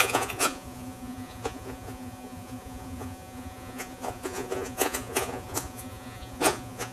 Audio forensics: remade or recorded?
remade